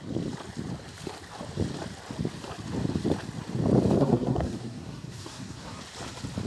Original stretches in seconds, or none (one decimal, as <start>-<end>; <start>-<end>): 0.0-4.0; 5.8-6.5